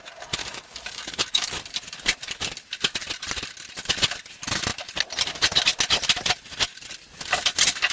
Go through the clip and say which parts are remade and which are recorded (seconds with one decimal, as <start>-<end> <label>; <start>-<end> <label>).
0.0-0.4 recorded; 0.4-1.5 remade; 1.5-7.9 recorded